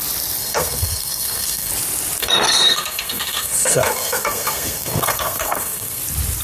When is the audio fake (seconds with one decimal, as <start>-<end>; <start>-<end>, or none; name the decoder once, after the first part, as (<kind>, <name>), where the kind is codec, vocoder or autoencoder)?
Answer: 0.4-1.7 (codec, SNAC); 2.2-6.0